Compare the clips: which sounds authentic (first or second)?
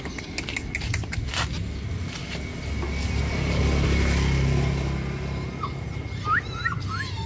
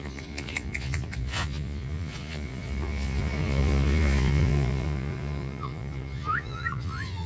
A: first